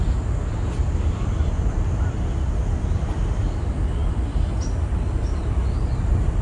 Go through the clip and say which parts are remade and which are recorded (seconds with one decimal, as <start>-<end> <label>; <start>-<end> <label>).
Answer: 0.0-6.4 recorded

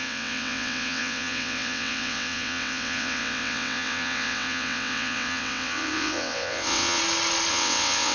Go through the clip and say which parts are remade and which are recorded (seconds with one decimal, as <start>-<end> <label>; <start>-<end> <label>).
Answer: 0.0-7.0 remade; 7.0-7.5 recorded; 7.5-8.1 remade

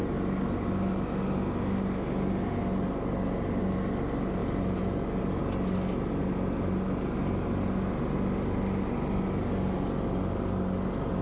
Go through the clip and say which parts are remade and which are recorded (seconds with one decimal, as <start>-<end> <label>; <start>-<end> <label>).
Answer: 0.0-11.2 recorded

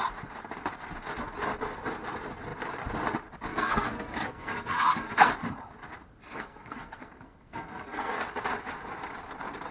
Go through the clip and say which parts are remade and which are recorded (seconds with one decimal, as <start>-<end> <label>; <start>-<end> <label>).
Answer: 0.0-3.5 recorded; 3.5-5.3 remade; 5.3-6.3 recorded; 6.3-8.2 remade; 8.2-9.7 recorded

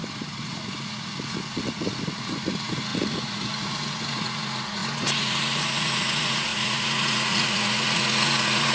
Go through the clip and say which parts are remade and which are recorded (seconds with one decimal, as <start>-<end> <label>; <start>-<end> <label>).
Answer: 0.0-8.7 remade

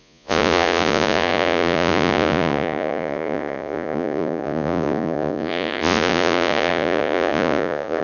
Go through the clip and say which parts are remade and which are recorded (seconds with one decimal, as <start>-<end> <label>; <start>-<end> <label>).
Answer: 0.0-8.0 remade

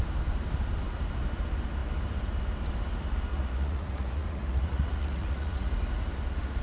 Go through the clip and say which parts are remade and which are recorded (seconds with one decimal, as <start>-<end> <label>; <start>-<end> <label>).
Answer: 0.0-3.3 recorded; 3.3-5.7 remade; 5.7-6.6 recorded

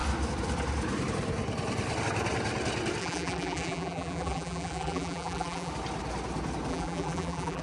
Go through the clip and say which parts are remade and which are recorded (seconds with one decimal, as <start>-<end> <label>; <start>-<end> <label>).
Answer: 0.0-3.0 recorded; 3.0-5.7 remade; 5.7-6.7 recorded; 6.7-7.6 remade